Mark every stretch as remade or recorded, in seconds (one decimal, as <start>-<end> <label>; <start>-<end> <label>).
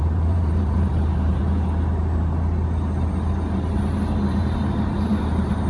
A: 0.0-1.4 remade; 1.4-4.3 recorded; 4.3-5.7 remade